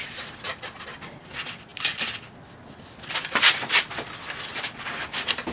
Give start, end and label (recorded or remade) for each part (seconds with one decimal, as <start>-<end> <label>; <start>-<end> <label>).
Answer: 0.0-5.5 recorded